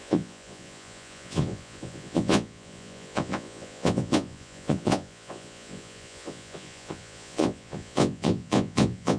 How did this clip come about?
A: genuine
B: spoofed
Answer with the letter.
B